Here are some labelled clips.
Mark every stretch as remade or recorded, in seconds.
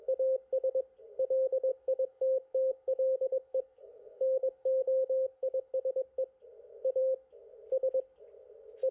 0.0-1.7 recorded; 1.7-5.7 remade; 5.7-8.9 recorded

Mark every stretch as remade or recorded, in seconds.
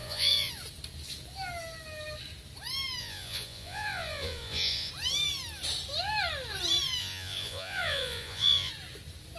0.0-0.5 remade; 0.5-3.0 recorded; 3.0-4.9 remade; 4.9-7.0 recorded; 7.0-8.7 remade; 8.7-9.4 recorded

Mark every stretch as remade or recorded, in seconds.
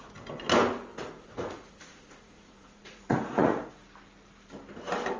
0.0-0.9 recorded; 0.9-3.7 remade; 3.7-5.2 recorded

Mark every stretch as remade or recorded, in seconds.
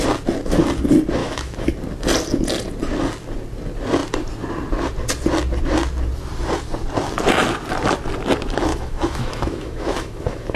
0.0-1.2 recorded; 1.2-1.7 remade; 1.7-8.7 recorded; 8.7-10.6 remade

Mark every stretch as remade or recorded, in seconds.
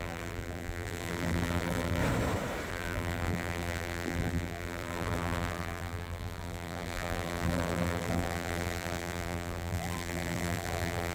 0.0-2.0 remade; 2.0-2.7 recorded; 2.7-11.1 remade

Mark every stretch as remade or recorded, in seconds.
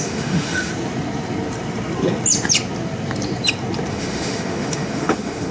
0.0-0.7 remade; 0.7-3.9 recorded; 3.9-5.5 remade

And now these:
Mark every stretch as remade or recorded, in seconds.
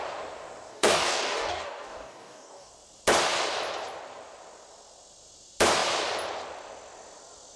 0.0-0.7 recorded; 0.7-2.7 remade; 2.7-7.6 recorded